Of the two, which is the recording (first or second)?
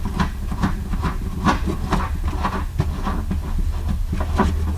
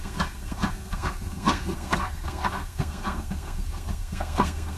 first